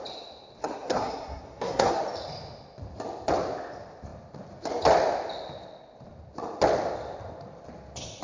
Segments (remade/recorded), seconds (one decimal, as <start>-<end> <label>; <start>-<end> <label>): 0.0-0.6 recorded; 0.6-2.0 remade; 2.0-8.2 recorded